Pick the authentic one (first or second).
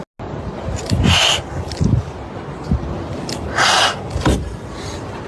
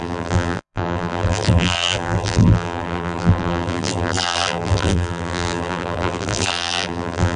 first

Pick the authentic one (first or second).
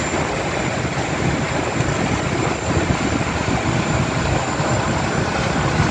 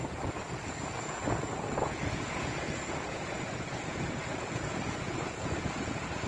first